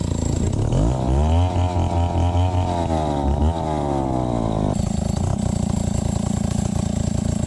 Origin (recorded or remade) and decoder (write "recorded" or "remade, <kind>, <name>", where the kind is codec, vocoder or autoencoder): recorded